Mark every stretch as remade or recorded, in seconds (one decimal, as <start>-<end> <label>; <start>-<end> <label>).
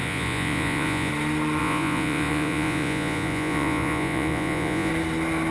0.0-1.1 remade; 1.1-1.6 recorded; 1.6-4.9 remade; 4.9-5.5 recorded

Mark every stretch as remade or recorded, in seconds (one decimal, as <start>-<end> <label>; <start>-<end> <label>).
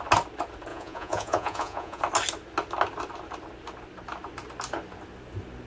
0.0-0.7 recorded; 0.7-2.0 remade; 2.0-5.7 recorded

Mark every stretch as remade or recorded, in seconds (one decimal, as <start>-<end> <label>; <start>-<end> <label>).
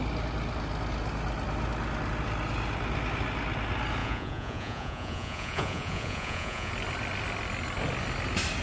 0.0-4.0 recorded; 4.0-6.7 remade; 6.7-8.6 recorded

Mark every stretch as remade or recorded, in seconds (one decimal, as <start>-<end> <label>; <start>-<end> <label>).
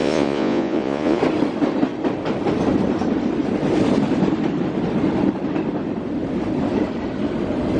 0.0-1.2 remade; 1.2-7.8 recorded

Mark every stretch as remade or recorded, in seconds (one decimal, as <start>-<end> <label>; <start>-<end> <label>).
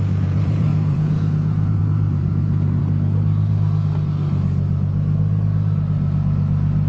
0.0-2.8 remade; 2.8-6.9 recorded